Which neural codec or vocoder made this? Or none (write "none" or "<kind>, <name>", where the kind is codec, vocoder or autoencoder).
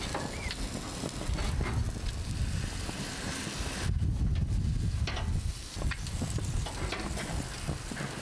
none